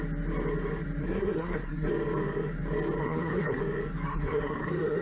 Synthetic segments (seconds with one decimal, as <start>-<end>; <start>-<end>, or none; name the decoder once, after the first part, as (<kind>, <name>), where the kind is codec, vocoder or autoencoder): 1.0-1.9 (codec, SNAC); 3.0-3.6; 4.1-5.0